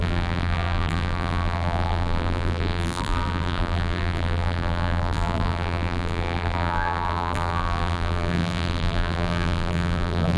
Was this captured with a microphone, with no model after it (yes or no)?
no